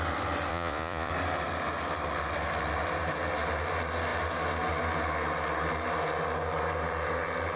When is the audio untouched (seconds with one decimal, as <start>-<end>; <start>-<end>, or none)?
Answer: 0.0-0.5; 1.1-7.6